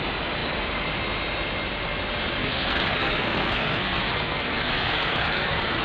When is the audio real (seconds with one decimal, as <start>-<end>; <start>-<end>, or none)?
0.0-2.4